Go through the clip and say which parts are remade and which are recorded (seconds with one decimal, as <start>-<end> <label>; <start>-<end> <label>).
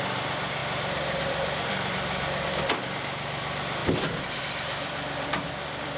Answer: 0.0-3.8 remade; 3.8-4.4 recorded; 4.4-6.0 remade